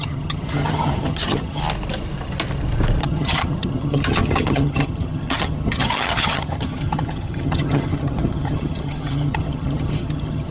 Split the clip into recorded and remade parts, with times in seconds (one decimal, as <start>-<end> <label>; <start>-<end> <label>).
0.0-1.6 remade; 1.6-3.0 recorded; 3.0-10.5 remade